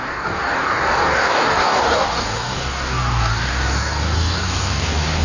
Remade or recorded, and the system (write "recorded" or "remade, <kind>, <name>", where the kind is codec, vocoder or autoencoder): remade, codec, DAC